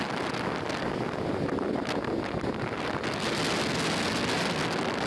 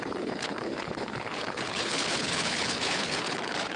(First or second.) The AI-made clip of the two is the second